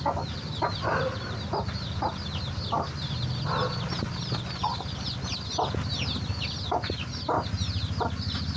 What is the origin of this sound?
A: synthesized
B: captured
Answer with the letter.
B